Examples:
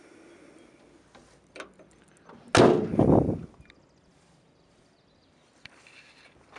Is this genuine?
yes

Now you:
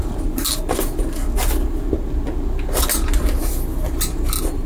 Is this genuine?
yes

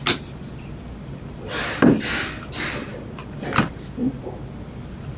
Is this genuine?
no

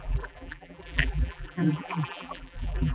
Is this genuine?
no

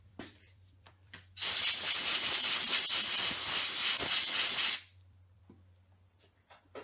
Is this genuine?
no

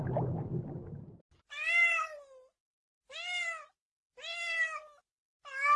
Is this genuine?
yes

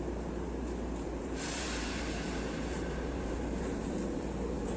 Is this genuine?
no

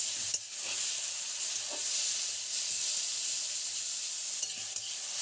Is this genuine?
yes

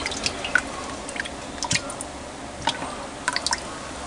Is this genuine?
yes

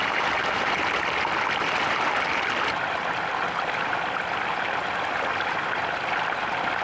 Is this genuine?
yes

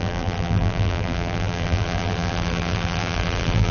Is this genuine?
no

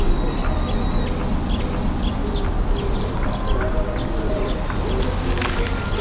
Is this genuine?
yes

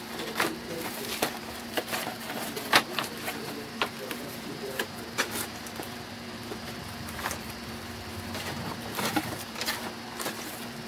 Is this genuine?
no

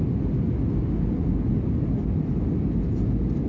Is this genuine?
yes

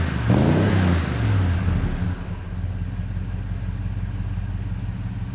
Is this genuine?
yes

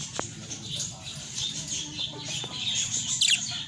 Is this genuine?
yes